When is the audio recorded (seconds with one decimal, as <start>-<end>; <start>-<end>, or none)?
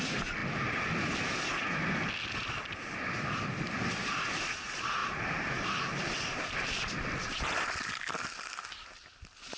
0.0-5.0; 7.8-9.6